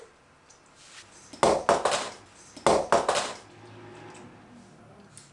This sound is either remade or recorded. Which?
recorded